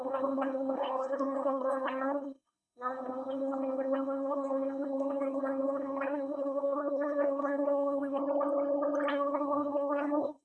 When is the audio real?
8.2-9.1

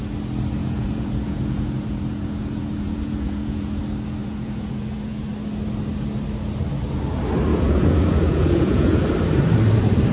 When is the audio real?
0.0-0.6; 3.8-4.2; 5.3-7.5; 9.0-10.1

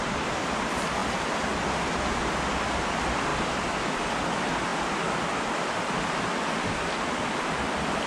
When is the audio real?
0.0-8.1

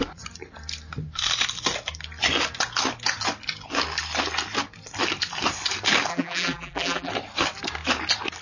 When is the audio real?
0.0-6.1; 7.1-8.4

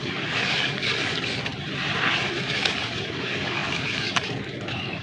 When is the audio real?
1.5-2.5